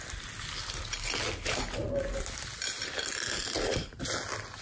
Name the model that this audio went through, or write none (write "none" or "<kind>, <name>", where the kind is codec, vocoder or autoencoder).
none